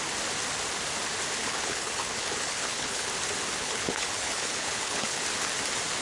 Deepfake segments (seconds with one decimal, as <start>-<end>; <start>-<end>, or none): 1.4-3.1; 3.6-5.2